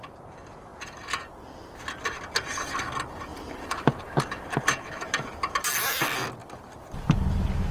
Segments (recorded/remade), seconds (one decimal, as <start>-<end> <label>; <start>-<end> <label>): 0.0-0.7 recorded; 0.7-1.7 remade; 1.7-3.3 recorded; 3.3-3.9 remade; 3.9-6.4 recorded; 6.4-7.7 remade